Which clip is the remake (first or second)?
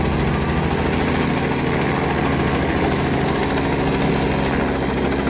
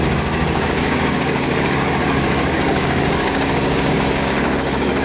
second